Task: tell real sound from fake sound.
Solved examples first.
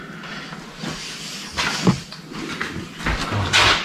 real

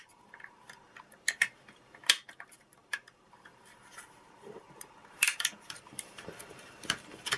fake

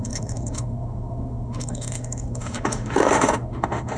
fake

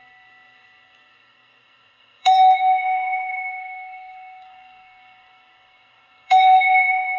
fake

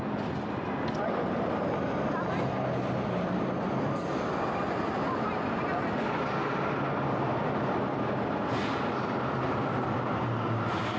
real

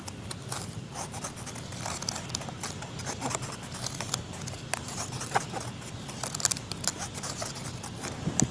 real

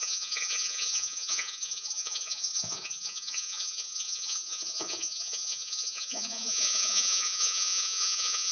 fake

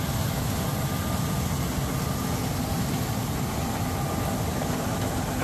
real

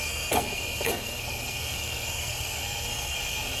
fake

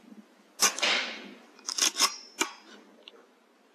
real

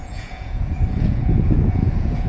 fake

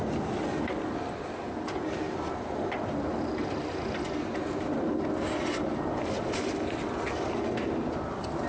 real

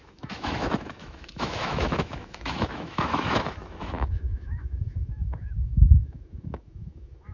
fake